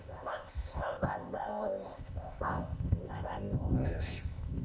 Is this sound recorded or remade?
remade